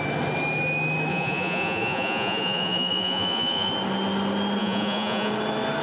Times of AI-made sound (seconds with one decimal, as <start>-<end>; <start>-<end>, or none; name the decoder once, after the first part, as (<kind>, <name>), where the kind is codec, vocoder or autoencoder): 1.1-3.7 (vocoder, Vocos); 4.6-5.3